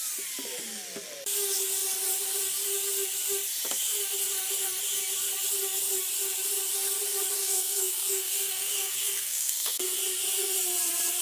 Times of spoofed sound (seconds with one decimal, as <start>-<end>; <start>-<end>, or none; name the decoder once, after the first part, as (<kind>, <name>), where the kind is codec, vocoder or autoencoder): 7.4-10.0 (codec, SNAC)